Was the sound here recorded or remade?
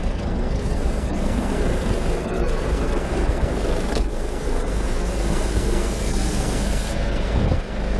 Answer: remade